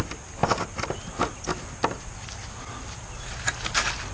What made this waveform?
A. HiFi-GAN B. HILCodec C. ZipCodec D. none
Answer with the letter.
D